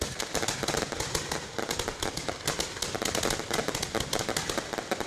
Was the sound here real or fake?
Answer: fake